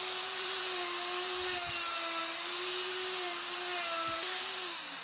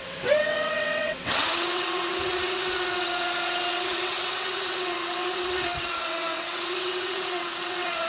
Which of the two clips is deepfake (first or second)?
second